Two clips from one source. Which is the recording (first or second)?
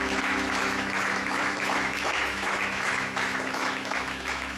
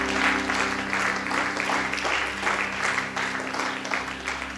second